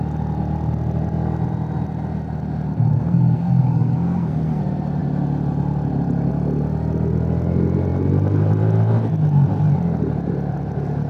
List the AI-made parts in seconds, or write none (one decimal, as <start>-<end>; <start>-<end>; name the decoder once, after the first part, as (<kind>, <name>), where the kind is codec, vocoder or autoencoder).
2.9-4.6 (codec, SNAC)